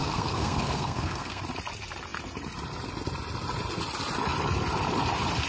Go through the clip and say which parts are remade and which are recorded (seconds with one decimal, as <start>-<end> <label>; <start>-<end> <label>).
0.0-1.4 remade; 1.4-5.5 recorded